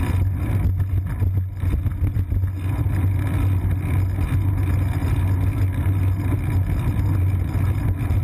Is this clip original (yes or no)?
yes